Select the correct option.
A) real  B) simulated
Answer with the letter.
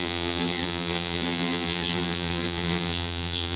B